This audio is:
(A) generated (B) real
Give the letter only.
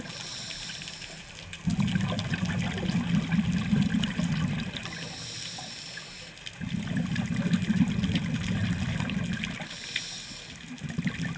B